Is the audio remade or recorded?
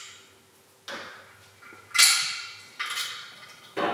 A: recorded